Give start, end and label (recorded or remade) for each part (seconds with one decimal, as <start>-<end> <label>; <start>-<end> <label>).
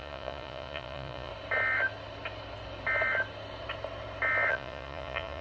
0.0-1.3 remade; 1.3-4.5 recorded; 4.5-5.4 remade